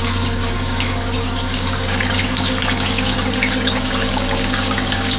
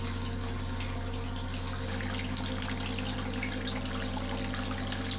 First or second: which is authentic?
second